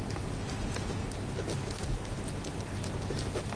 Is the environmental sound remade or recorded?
recorded